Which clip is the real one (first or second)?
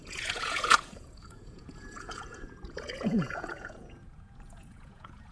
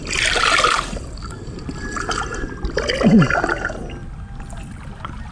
second